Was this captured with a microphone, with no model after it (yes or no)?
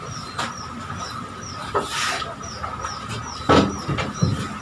yes